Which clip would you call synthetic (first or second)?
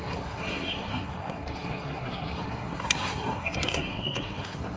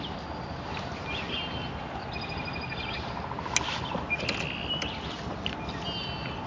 first